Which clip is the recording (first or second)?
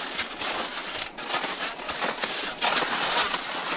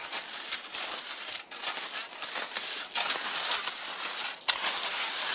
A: second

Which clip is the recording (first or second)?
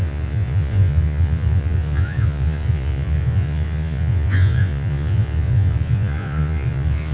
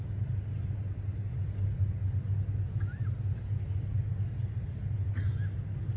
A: second